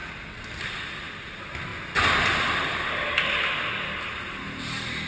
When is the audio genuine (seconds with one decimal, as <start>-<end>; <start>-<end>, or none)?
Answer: 0.0-5.1